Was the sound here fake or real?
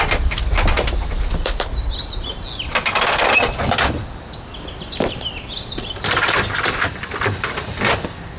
real